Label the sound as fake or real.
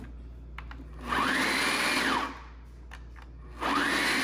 real